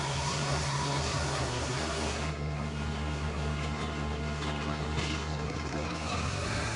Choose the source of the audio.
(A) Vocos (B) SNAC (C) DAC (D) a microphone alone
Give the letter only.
B